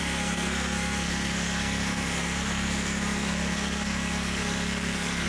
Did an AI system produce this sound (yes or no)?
yes